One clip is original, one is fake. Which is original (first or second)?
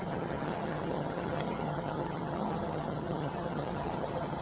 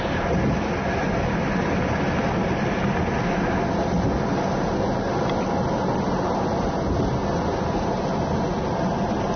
second